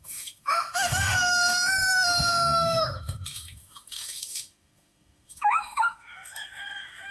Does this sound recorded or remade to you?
remade